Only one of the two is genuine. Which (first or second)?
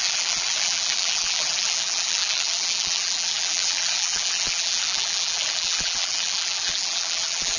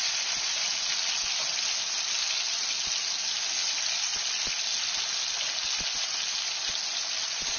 second